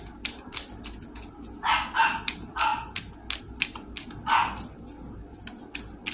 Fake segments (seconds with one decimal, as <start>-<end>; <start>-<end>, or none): none